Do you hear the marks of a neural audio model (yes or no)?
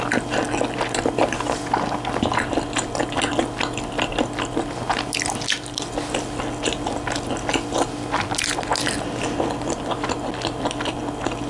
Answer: no